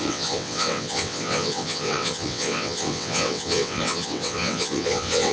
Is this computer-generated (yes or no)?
yes